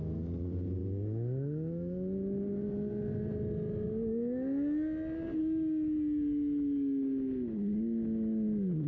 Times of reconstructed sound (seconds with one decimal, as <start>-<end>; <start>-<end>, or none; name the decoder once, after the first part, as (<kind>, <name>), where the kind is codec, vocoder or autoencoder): none